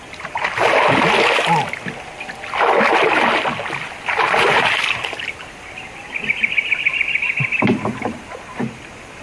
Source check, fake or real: real